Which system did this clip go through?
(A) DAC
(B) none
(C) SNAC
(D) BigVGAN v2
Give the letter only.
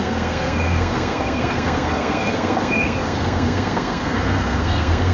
C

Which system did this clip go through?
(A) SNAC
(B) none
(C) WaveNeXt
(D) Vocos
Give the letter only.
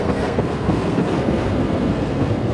A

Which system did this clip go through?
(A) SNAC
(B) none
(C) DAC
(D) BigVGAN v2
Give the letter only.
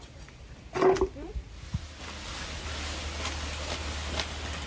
B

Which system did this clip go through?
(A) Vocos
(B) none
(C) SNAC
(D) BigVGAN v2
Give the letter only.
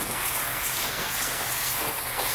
C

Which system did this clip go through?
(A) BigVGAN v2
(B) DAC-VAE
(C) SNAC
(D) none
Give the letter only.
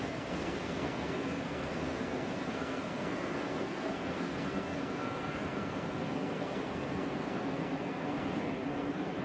C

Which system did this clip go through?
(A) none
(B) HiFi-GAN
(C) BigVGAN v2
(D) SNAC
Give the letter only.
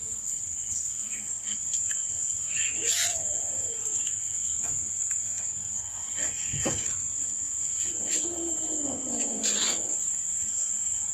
D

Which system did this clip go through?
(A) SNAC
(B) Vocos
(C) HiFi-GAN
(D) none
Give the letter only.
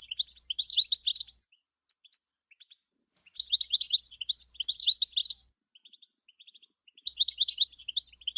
D